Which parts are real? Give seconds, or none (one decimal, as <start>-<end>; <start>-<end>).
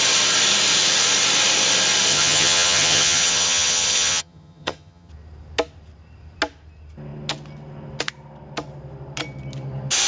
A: 0.0-2.1; 5.1-10.1